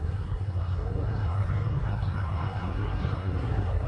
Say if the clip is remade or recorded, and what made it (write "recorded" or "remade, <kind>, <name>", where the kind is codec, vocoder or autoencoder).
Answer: remade, codec, SNAC